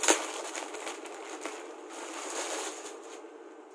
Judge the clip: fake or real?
real